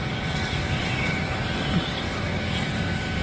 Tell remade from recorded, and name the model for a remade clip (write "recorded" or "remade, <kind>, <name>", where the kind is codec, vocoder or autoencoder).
remade, vocoder, BigVGAN v2